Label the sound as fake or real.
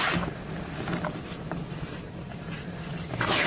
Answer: fake